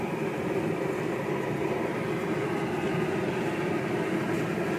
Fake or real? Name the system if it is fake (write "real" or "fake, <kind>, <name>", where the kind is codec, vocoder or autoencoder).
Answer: real